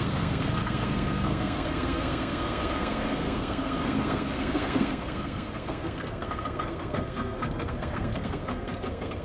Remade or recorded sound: remade